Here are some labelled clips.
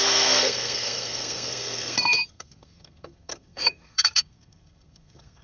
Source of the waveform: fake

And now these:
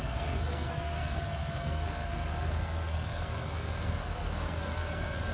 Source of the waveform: fake